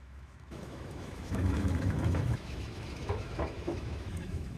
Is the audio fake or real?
fake